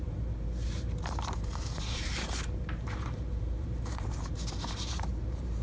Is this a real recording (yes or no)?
no